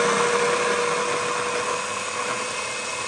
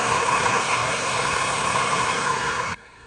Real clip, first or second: first